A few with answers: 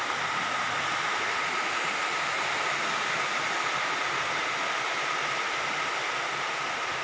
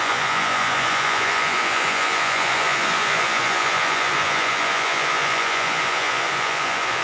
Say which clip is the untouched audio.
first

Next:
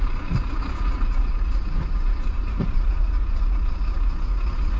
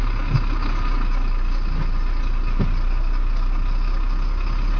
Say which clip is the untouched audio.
second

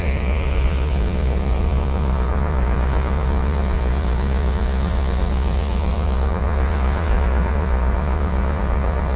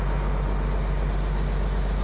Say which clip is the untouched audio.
second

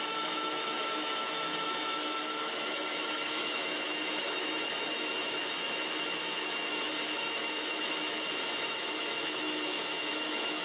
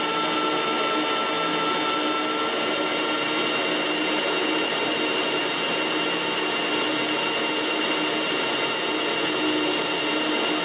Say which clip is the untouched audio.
second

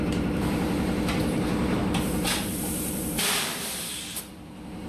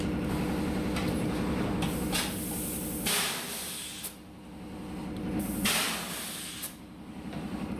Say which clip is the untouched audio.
second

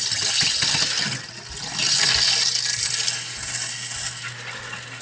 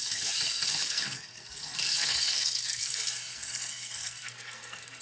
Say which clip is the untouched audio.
first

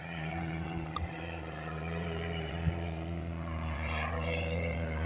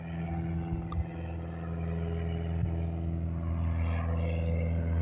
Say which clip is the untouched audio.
second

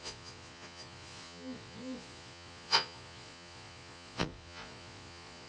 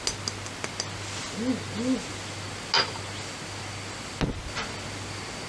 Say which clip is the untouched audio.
second